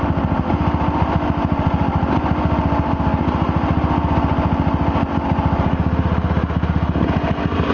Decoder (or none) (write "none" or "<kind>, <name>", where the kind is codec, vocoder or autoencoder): none